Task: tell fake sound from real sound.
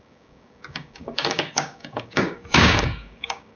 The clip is fake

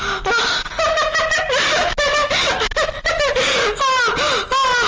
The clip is real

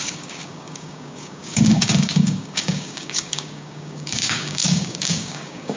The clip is fake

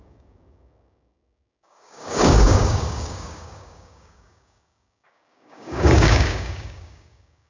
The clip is fake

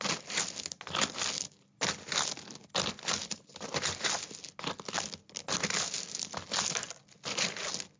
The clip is real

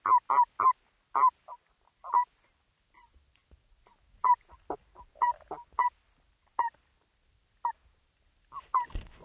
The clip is real